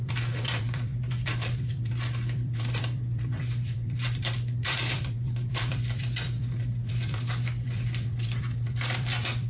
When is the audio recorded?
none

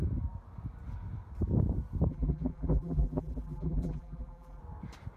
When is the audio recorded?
0.0-2.1; 4.6-5.2

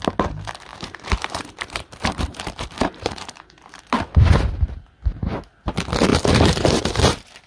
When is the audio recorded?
0.0-0.7; 3.8-6.1

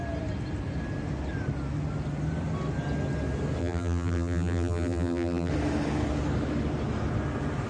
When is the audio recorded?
0.0-3.6; 5.5-7.7